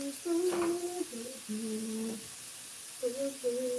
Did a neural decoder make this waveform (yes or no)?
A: no